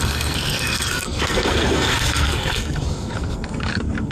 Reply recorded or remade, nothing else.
remade